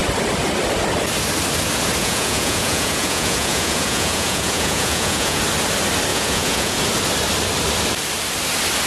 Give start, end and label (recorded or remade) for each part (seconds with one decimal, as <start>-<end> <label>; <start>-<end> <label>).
0.0-2.0 recorded; 2.0-5.4 remade; 5.4-6.1 recorded; 6.1-6.8 remade; 6.8-8.9 recorded